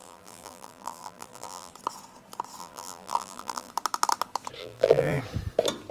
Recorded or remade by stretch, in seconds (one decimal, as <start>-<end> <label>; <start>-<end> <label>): 0.0-1.7 remade; 1.7-2.6 recorded; 2.6-3.7 remade; 3.7-4.6 recorded; 4.6-5.2 remade; 5.2-5.9 recorded